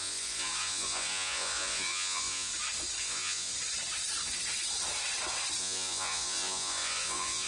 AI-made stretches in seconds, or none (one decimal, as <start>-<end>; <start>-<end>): 0.0-2.5; 3.0-3.5; 5.6-7.5